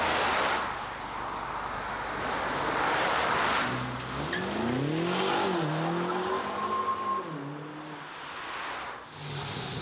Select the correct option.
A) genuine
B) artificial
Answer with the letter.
A